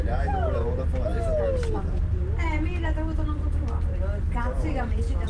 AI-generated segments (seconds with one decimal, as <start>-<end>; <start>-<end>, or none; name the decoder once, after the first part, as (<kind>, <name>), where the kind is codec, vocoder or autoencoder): none